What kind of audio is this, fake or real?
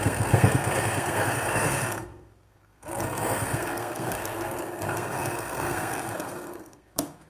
fake